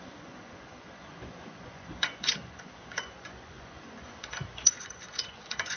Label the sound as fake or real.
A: fake